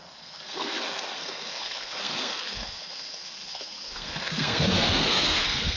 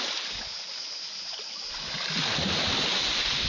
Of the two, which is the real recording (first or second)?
second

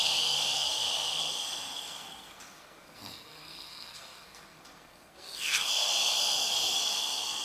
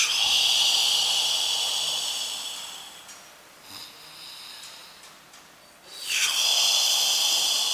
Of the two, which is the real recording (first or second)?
second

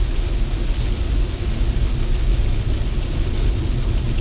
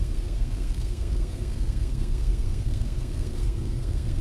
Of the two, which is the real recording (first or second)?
first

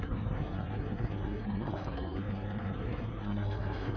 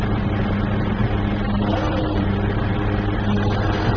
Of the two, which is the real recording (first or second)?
second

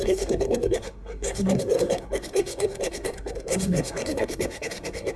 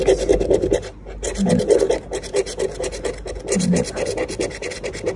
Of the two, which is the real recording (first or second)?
second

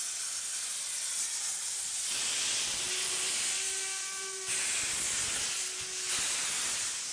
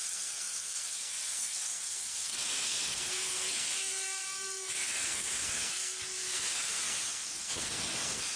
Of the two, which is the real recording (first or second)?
first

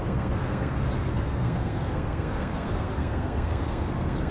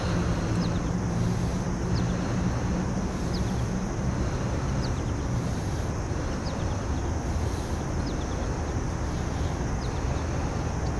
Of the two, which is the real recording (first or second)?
second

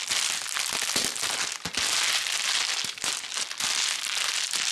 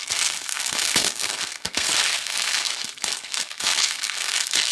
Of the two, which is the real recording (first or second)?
first